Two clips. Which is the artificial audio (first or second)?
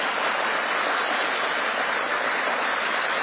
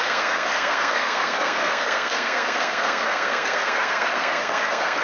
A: second